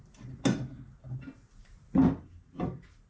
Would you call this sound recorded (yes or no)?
yes